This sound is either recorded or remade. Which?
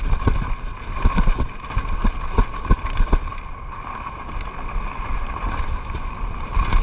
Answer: recorded